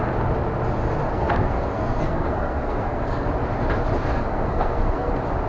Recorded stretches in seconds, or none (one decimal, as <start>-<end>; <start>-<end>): 0.0-1.1; 3.3-4.1; 5.1-5.5